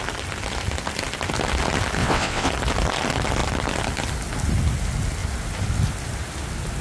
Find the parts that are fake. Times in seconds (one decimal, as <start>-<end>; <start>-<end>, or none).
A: 2.0-2.5

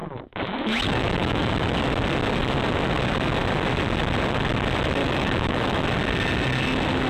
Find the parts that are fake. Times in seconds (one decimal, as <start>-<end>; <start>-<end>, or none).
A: 0.0-1.5; 5.0-5.8